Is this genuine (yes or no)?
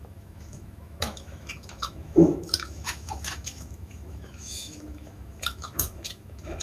no